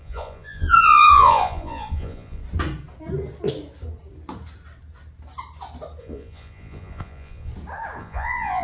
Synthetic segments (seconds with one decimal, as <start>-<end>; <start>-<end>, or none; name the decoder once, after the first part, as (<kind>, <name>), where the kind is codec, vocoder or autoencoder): 0.0-2.4 (vocoder, Vocos); 6.0-7.5; 8.0-8.6